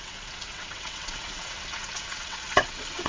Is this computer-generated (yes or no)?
yes